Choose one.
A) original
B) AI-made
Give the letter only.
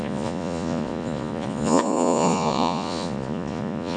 B